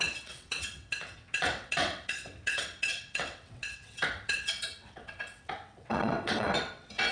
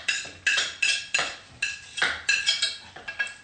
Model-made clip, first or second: first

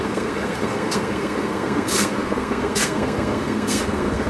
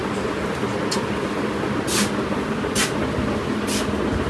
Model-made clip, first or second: first